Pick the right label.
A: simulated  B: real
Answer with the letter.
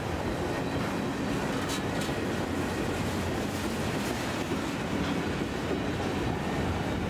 B